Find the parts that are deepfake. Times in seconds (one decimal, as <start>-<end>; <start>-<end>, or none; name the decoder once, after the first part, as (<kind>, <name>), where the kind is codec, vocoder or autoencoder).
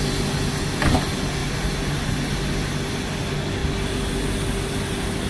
none